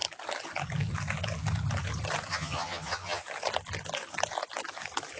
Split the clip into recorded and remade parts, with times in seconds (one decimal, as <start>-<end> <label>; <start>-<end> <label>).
0.0-2.3 recorded; 2.3-3.2 remade; 3.2-5.2 recorded